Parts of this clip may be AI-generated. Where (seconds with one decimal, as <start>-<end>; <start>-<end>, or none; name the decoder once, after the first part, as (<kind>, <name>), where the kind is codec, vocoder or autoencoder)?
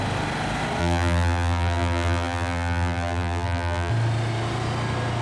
0.8-3.9 (vocoder, BigVGAN v2)